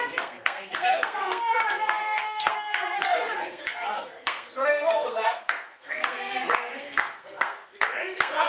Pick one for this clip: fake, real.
fake